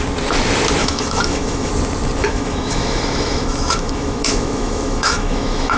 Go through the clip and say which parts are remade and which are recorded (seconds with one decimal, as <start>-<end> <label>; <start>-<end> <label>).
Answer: 0.0-0.8 recorded; 0.8-1.7 remade; 1.7-2.2 recorded; 2.2-5.8 remade